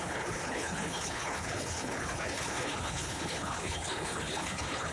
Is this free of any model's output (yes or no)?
no